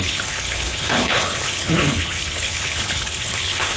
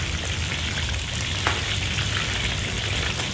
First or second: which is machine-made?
first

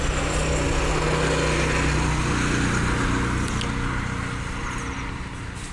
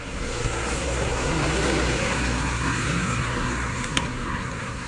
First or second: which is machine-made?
second